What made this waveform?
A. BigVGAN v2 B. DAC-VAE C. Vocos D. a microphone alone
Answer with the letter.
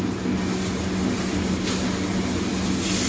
D